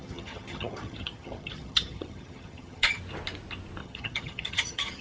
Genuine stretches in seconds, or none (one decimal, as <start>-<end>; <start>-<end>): 3.0-3.8